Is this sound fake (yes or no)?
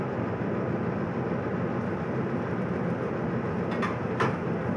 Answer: no